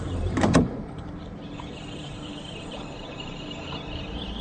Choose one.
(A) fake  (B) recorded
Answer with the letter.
A